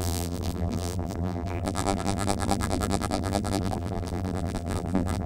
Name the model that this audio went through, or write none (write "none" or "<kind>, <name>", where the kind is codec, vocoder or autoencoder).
vocoder, BigVGAN v2